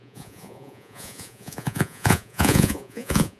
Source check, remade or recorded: remade